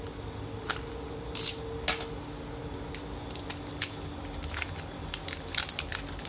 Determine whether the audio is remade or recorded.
recorded